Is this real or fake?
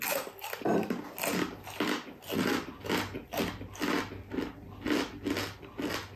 real